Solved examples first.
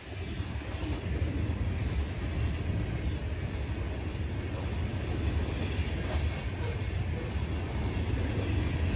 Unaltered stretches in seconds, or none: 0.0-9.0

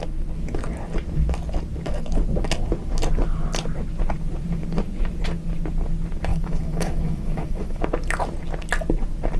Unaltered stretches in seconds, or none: 0.0-6.3; 7.8-9.4

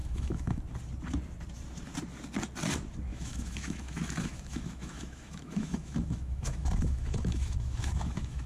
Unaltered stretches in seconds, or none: 0.6-3.1